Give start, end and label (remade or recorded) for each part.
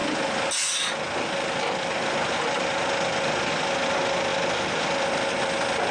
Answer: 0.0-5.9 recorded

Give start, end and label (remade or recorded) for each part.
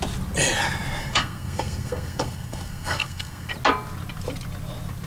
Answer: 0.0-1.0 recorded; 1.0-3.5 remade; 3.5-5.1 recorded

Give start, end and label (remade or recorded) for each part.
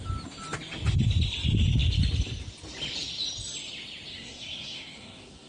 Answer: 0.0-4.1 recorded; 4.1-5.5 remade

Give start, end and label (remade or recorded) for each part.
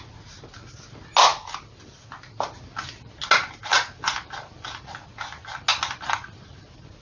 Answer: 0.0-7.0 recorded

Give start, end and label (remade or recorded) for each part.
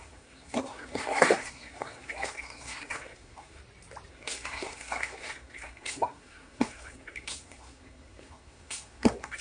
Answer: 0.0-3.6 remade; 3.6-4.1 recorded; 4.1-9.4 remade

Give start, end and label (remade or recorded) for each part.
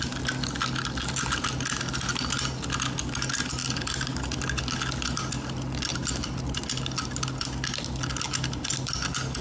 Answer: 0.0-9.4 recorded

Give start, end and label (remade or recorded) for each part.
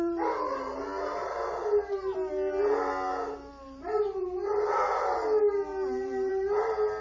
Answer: 0.0-7.0 recorded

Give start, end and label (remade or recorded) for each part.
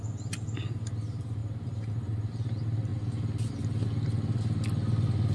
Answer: 0.0-5.3 recorded